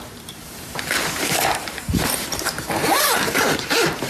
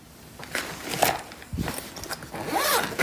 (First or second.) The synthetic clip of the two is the first